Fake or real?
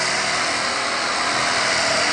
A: real